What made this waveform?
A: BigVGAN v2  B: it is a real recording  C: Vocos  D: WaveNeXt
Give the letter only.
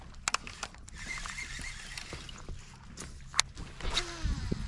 B